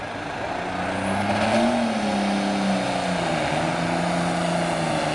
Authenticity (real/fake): real